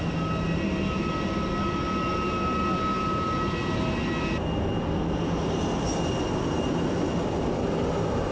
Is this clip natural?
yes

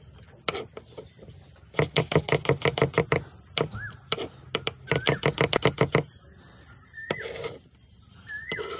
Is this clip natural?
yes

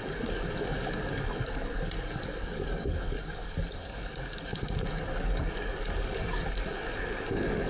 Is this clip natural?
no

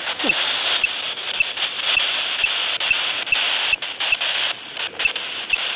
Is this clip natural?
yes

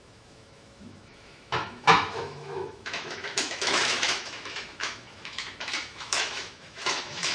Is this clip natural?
no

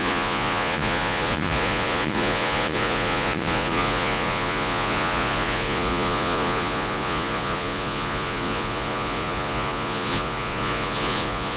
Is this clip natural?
no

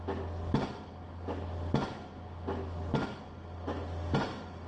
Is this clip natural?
yes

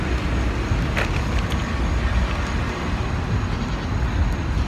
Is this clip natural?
yes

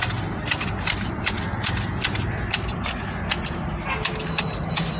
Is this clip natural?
yes